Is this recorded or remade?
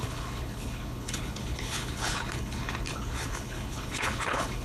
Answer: remade